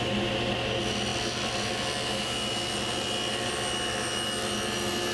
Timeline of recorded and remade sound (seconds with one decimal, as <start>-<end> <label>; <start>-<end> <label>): 0.0-5.1 recorded